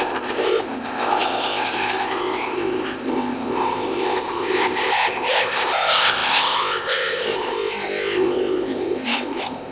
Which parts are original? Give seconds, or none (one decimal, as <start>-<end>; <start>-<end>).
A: none